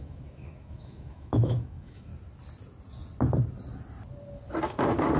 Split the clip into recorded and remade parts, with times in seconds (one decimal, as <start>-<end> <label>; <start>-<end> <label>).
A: 0.0-2.1 remade; 2.1-5.2 recorded